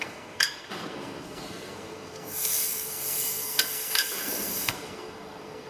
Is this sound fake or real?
fake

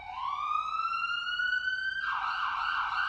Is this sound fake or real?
real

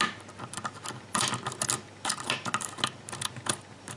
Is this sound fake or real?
real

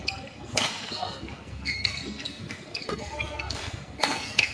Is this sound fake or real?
fake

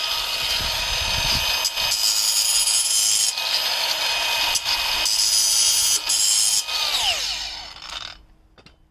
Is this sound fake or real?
real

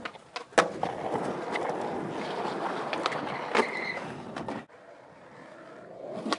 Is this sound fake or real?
real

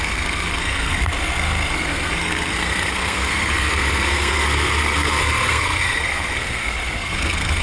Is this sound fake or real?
fake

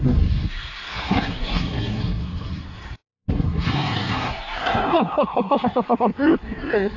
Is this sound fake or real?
fake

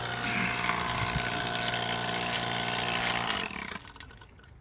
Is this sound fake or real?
real